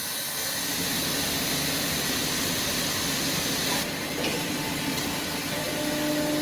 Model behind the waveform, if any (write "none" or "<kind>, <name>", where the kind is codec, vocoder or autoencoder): none